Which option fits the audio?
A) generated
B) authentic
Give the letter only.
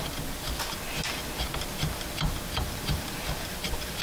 B